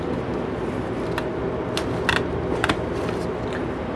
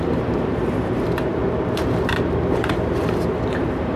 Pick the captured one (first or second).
first